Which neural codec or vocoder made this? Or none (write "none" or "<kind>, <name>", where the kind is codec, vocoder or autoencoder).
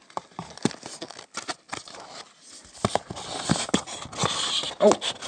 none